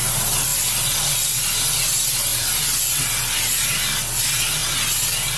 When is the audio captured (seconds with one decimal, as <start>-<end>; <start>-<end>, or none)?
0.0-5.4